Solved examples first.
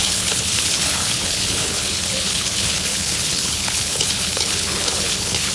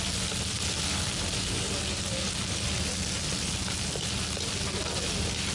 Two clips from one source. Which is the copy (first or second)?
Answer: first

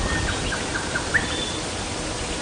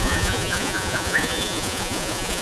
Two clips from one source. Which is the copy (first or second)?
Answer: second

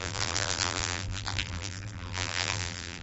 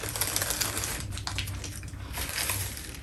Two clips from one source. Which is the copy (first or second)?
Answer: first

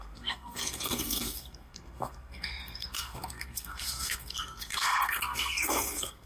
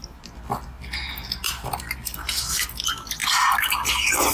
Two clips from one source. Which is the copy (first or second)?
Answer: first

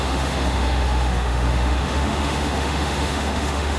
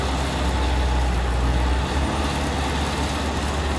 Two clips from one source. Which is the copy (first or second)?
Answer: first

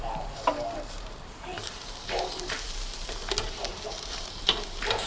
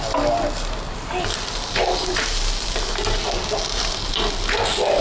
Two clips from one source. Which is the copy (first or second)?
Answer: first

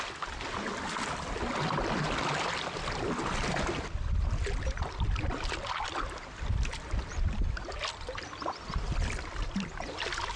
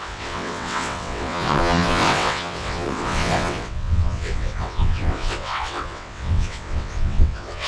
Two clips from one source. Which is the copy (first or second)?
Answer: second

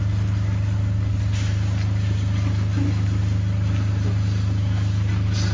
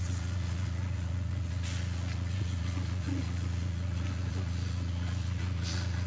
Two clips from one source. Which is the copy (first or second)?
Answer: second